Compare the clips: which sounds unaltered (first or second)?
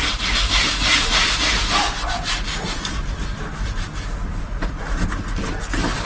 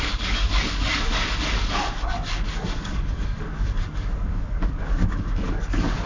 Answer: first